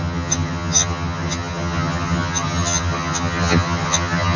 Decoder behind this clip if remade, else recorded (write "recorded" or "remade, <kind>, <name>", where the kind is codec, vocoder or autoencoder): remade, vocoder, HiFi-GAN